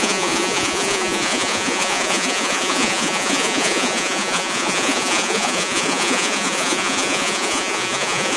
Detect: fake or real fake